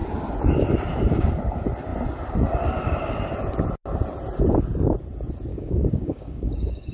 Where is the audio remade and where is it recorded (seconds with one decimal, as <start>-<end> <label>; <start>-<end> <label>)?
0.0-5.5 recorded; 5.5-6.9 remade